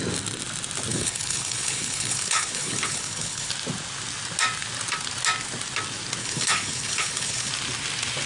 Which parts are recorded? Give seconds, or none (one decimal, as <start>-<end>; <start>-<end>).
0.0-0.9; 3.5-6.2; 7.5-8.3